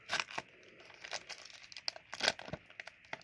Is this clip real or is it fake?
real